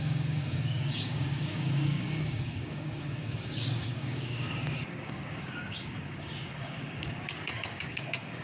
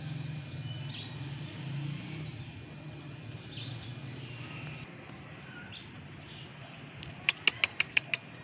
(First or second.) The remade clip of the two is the first